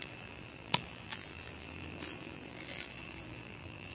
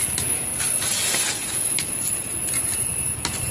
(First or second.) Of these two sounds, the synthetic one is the first